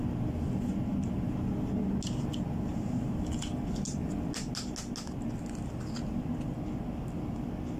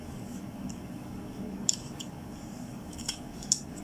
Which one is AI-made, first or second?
second